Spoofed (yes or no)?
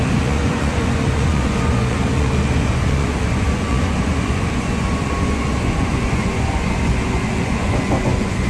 yes